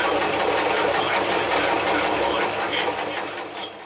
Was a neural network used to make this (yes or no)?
no